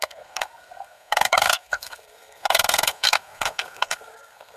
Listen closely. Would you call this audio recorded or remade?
remade